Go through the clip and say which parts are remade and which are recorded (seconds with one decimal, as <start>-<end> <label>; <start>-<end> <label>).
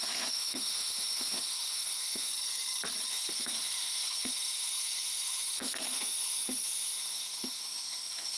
0.0-2.3 remade; 2.3-3.1 recorded; 3.1-8.4 remade